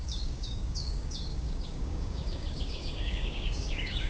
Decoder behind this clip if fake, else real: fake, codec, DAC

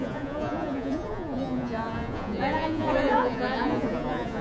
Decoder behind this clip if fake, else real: fake, vocoder, Vocos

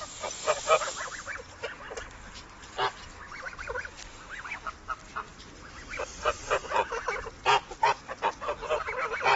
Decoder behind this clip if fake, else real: real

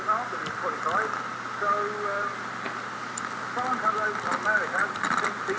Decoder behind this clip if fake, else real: real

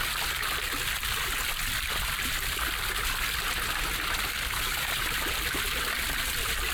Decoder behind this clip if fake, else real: real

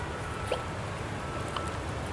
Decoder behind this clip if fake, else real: real